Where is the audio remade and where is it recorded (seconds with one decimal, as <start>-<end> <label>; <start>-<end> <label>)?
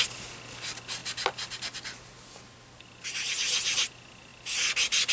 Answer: 0.0-5.1 recorded